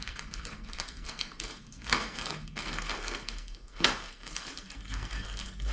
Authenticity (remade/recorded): remade